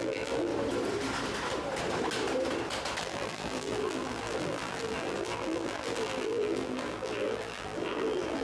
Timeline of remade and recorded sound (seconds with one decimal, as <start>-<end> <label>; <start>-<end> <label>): 0.0-0.5 remade; 0.5-3.0 recorded; 3.0-8.4 remade